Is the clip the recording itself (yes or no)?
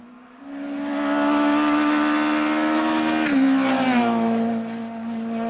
yes